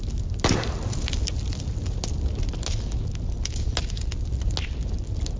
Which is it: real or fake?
real